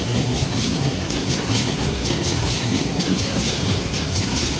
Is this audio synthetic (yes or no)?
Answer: yes